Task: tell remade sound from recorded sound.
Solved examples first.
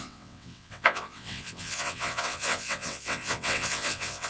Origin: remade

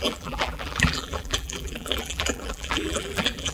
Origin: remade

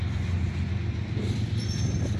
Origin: recorded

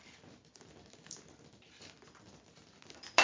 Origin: recorded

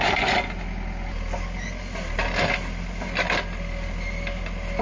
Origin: recorded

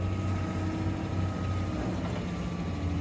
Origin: recorded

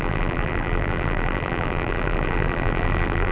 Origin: remade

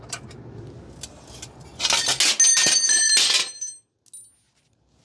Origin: recorded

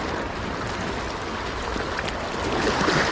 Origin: recorded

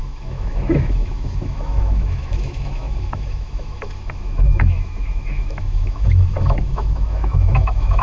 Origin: remade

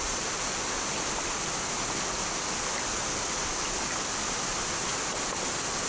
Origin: recorded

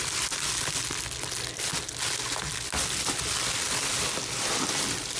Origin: recorded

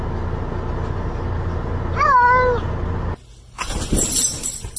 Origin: recorded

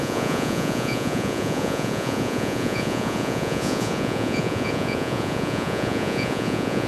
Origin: remade